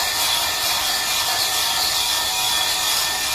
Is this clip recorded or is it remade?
recorded